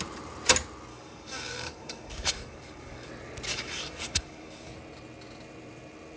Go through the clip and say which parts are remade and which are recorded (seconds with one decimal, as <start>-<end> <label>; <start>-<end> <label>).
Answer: 0.0-0.9 recorded; 0.9-3.1 remade; 3.1-3.5 recorded; 3.5-4.7 remade; 4.7-6.2 recorded